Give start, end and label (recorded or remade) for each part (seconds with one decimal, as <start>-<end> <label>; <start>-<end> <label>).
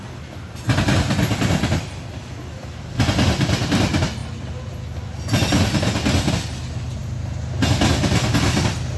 0.0-9.0 recorded